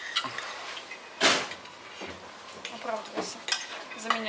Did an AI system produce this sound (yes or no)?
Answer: no